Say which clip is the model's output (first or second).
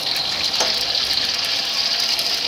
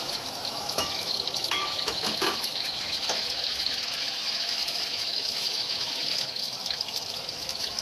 second